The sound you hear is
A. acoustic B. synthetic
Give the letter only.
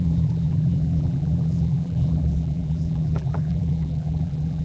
B